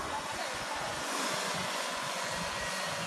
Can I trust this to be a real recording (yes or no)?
no